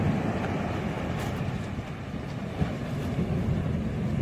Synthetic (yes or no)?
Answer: no